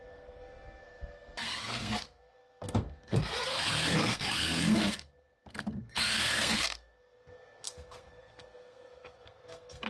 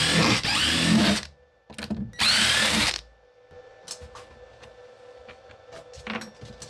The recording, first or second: second